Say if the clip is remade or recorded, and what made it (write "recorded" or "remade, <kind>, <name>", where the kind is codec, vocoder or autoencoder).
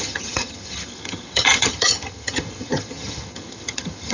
remade, vocoder, HiFi-GAN